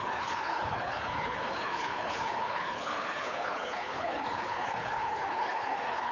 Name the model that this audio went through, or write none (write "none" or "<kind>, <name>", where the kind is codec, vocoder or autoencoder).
codec, HILCodec